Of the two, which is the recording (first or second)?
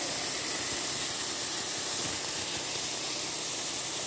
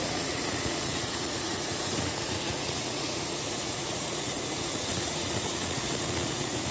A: first